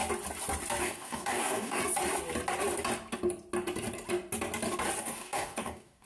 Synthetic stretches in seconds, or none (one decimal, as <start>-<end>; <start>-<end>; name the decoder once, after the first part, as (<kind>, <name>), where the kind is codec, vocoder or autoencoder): 0.8-1.8 (codec, DAC); 5.0-6.1